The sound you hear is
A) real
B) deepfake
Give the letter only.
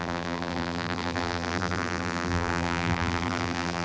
B